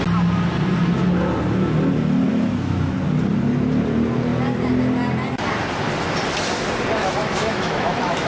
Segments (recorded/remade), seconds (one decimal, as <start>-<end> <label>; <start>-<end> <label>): 0.0-2.3 recorded; 2.3-2.9 remade; 2.9-7.0 recorded; 7.0-8.3 remade